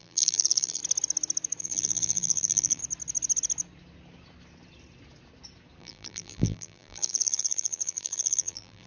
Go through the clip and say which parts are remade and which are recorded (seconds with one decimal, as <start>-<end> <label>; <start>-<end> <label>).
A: 0.0-0.8 remade; 0.8-1.6 recorded; 1.6-2.8 remade; 2.8-5.8 recorded; 5.8-8.9 remade